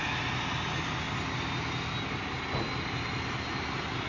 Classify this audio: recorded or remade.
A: recorded